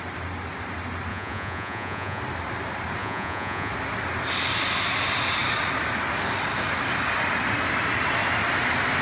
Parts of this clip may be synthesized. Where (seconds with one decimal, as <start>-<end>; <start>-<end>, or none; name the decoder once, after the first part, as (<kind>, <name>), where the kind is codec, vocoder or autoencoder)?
1.1-2.2 (vocoder, Vocos); 3.0-3.7